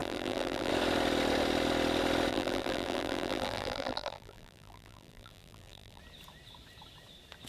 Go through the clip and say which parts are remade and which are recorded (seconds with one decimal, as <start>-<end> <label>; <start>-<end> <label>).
0.0-0.7 remade; 0.7-2.3 recorded; 2.3-6.0 remade; 6.0-7.5 recorded